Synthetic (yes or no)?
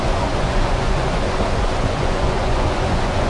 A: yes